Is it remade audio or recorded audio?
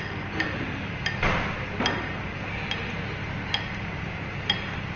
recorded